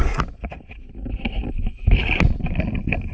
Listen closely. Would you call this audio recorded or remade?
recorded